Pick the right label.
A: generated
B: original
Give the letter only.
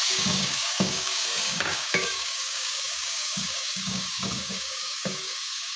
A